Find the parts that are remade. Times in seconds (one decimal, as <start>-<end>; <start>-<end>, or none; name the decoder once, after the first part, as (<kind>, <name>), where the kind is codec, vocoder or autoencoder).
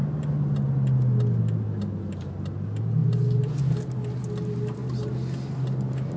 none